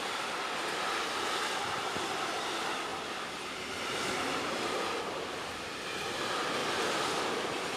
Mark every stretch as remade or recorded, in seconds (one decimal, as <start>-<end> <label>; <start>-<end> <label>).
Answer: 0.0-2.9 recorded; 2.9-5.0 remade; 5.0-7.8 recorded